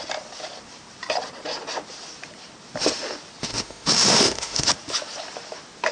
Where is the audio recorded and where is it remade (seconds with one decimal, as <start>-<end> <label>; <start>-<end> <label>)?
0.0-3.4 recorded; 3.4-4.7 remade; 4.7-5.9 recorded